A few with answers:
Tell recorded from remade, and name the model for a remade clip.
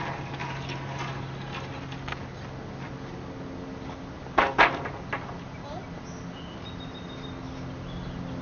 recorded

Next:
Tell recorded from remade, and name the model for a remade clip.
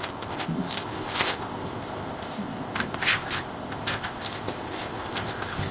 remade, codec, ZipCodec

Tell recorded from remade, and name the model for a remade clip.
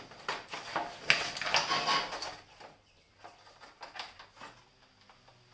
recorded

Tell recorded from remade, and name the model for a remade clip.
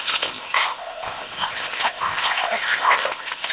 remade, codec, ZipCodec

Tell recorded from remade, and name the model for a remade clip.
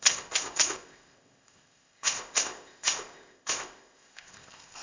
remade, codec, ZipCodec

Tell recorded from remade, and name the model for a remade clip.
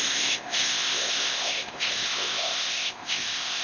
remade, codec, ZipCodec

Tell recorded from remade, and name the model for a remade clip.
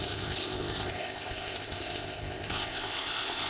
remade, codec, ZipCodec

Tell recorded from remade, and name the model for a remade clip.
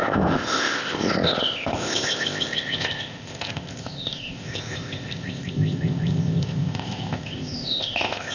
remade, codec, ZipCodec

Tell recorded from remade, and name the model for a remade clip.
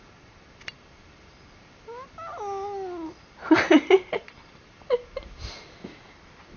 recorded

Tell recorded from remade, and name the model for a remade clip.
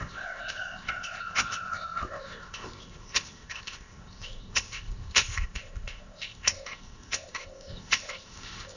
remade, codec, ZipCodec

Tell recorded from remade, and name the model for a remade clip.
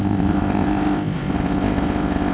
remade, codec, ZipCodec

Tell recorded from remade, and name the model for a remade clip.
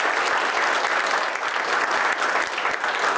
recorded